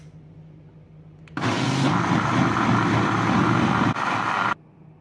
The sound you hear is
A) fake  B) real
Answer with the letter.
B